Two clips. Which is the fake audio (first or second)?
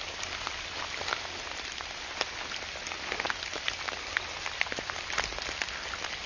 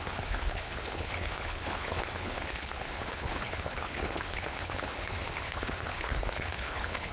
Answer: second